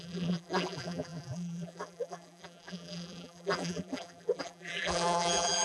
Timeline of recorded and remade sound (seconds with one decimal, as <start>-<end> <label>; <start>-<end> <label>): 0.0-5.6 remade